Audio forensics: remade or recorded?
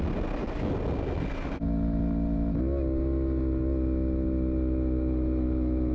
recorded